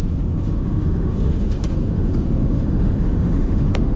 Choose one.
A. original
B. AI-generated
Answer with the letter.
B